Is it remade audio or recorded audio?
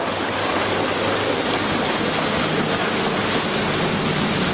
recorded